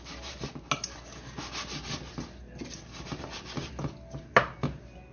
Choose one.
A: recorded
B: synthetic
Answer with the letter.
A